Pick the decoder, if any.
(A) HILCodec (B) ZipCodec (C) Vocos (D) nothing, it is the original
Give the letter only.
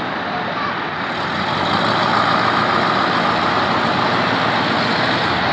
D